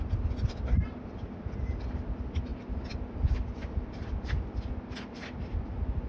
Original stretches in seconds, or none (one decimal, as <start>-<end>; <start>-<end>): 0.0-6.1